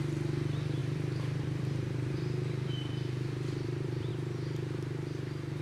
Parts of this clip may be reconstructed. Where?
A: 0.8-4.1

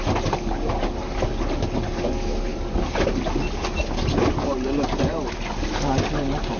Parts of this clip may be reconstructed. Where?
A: none

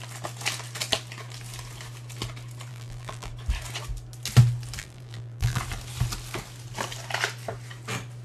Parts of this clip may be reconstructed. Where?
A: 2.7-3.3; 4.8-5.6

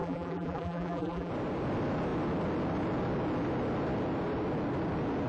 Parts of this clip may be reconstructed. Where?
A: 0.0-1.3